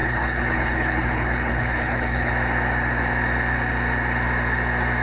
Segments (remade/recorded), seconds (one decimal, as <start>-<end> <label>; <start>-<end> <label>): 0.0-2.3 remade; 2.3-5.0 recorded